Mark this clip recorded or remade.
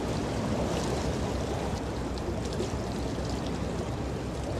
recorded